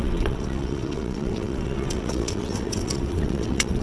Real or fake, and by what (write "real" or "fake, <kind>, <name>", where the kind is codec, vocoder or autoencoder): fake, vocoder, WaveNeXt